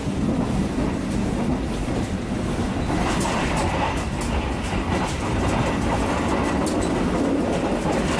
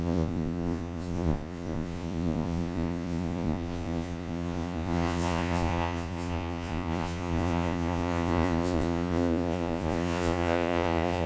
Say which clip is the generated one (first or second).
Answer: second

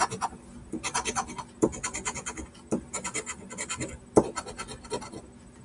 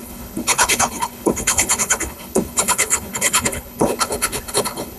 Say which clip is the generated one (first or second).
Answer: second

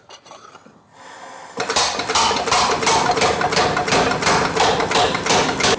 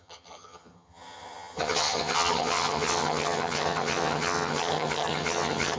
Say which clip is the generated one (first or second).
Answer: second